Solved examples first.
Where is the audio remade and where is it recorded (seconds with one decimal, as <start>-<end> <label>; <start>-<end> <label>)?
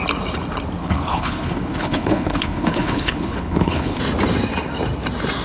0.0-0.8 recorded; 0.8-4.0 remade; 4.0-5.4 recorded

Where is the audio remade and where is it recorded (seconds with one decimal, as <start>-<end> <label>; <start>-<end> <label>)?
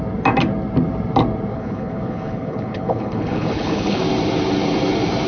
0.0-1.5 recorded; 1.5-4.0 remade; 4.0-5.3 recorded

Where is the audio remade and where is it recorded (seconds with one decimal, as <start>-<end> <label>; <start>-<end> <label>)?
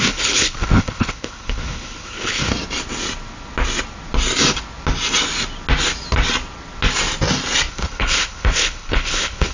0.0-2.5 remade; 2.5-7.7 recorded; 7.7-9.5 remade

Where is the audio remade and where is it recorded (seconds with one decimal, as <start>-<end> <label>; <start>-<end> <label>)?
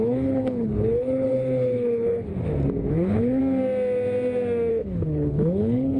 0.0-2.3 remade; 2.3-2.9 recorded; 2.9-3.4 remade; 3.4-4.7 recorded; 4.7-6.0 remade